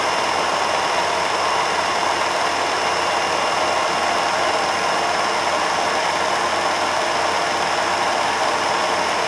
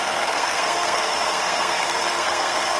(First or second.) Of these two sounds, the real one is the first